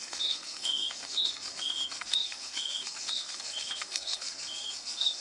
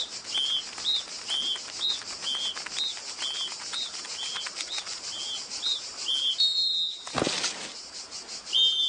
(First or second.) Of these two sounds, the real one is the second